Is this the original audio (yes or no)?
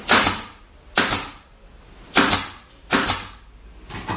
yes